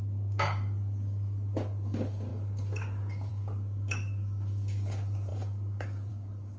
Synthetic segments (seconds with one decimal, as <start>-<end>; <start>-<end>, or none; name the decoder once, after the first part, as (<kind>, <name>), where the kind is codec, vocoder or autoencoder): 0.0-6.6 (codec, DAC)